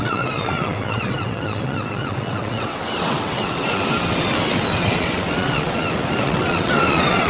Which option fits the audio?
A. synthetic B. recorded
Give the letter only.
A